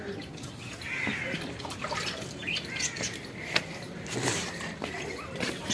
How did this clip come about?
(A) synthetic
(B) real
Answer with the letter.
B